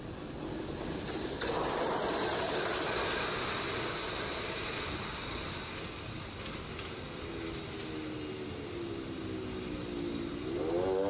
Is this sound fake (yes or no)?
no